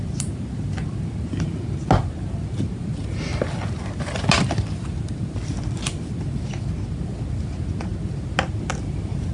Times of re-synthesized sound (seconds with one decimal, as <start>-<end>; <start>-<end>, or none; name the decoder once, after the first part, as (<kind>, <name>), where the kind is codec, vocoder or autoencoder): none